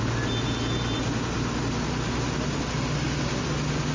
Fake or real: real